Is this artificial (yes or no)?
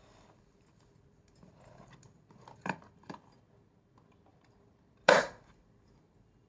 no